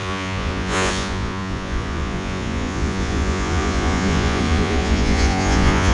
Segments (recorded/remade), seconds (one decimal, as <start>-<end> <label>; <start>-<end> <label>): 0.0-5.9 remade